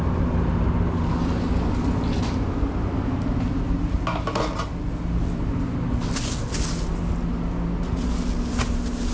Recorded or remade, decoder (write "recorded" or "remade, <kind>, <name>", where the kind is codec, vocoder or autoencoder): recorded